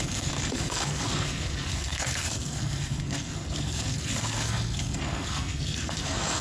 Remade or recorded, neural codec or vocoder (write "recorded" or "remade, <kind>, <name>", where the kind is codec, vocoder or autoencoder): remade, codec, SNAC